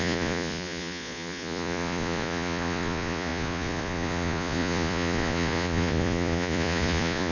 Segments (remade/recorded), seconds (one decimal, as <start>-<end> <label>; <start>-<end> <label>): 0.0-7.3 remade

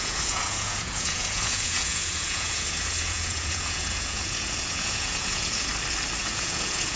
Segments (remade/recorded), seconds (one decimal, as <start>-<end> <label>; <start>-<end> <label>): 0.0-5.7 remade; 5.7-6.2 recorded; 6.2-7.0 remade

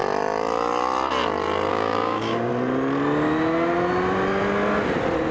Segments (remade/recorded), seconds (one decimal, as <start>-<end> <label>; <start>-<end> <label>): 0.0-1.7 recorded; 1.7-2.5 remade; 2.5-5.3 recorded